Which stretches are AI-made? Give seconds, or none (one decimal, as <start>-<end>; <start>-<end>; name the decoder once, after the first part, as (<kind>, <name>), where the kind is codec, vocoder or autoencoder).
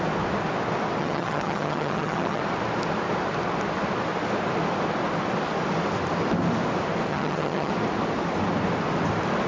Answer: 1.0-2.4 (vocoder, HiFi-GAN); 7.1-7.7